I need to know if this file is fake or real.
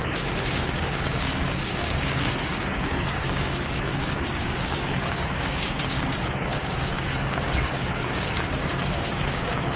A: fake